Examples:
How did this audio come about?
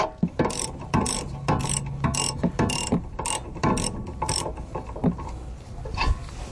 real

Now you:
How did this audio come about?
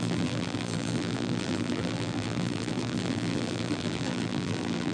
fake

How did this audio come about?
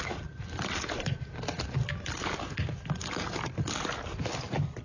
real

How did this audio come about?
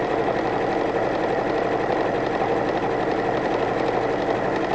real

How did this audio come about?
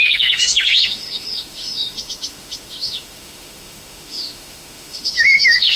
fake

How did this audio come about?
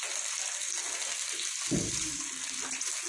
real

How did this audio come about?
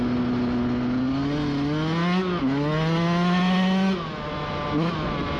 real